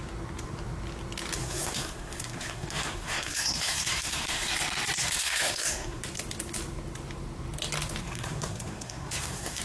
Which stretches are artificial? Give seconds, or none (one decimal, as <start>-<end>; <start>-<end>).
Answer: 1.4-4.5; 5.0-6.0; 8.0-9.6